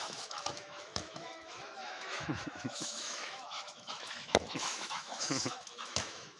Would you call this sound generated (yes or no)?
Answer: yes